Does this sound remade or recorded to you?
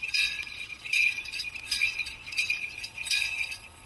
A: remade